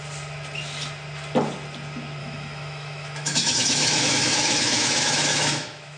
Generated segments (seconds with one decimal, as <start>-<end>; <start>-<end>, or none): 2.2-6.0